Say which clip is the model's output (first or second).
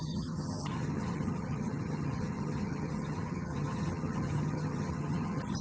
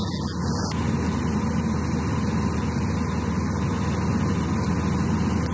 first